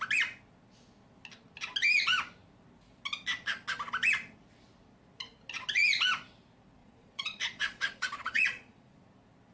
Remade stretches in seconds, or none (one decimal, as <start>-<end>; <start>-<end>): 6.8-9.0